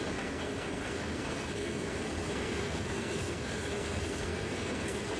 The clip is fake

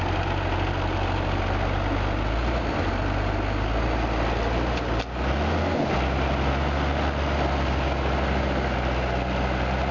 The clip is real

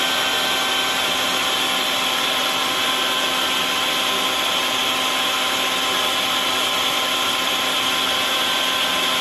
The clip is real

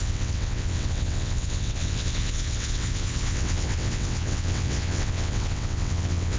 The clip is fake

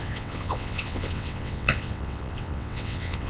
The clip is fake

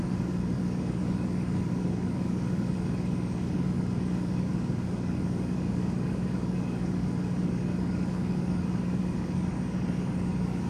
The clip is fake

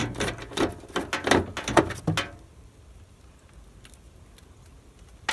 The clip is real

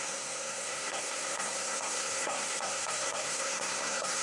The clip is fake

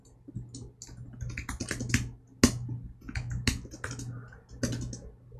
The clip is real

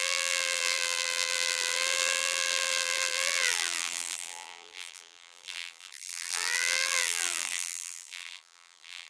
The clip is fake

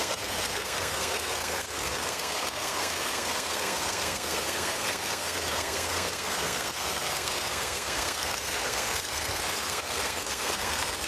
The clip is fake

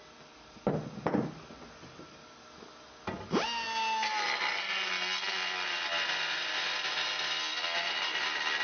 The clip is real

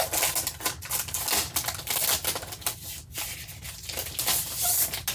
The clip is real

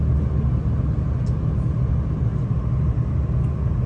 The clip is real